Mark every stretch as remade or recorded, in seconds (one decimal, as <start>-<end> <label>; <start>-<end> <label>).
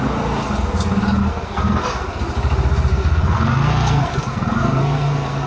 0.0-1.2 recorded; 1.2-2.2 remade; 2.2-2.9 recorded; 2.9-5.5 remade